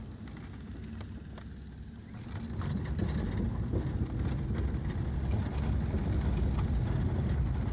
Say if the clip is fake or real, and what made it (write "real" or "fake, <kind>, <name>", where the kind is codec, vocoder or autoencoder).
real